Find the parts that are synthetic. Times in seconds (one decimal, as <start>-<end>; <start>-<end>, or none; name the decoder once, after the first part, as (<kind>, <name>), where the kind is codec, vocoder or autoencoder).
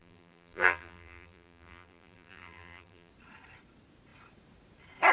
0.0-3.1 (vocoder, BigVGAN v2)